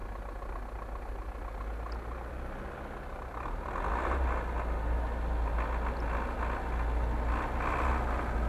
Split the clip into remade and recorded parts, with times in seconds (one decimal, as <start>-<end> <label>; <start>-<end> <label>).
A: 0.0-8.5 recorded